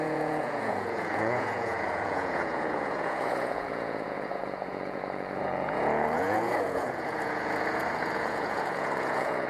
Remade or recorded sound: remade